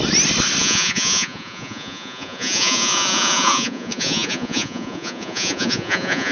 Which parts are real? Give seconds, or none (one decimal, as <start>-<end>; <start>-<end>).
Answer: 0.0-0.6